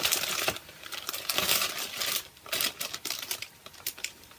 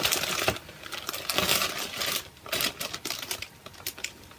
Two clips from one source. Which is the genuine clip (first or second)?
second